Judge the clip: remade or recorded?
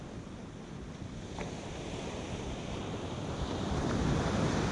recorded